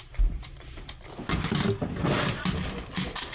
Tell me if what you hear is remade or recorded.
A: recorded